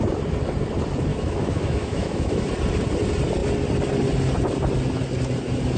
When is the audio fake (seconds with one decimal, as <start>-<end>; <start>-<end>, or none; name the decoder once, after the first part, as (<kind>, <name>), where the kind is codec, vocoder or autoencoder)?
1.1-2.5 (autoencoder, DAC-VAE)